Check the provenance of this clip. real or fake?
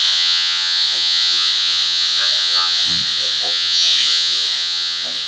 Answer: fake